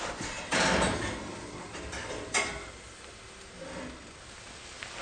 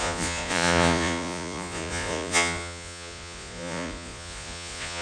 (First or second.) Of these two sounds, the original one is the first